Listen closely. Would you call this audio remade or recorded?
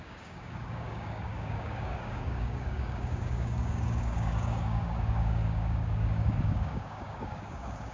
remade